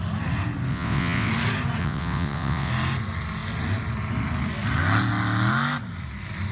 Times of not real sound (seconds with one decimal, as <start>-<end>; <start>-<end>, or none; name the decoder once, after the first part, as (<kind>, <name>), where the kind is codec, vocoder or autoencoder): 0.7-1.3 (vocoder, WaveNeXt); 1.8-2.7